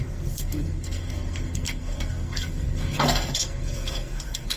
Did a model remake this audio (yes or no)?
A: yes